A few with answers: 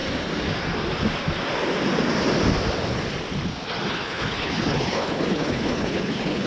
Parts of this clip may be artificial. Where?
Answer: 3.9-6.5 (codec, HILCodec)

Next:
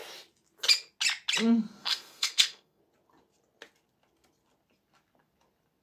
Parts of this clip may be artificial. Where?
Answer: 1.8-2.8 (codec, SNAC)

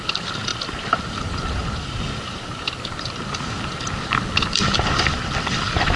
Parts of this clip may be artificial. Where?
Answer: 0.0-6.0 (vocoder, BigVGAN v2)

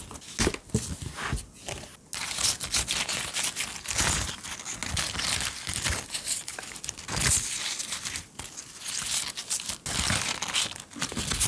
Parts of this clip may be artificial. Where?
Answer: none

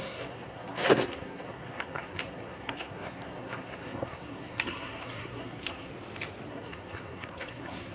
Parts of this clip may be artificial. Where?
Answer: 0.0-5.9 (codec, SNAC); 6.5-7.9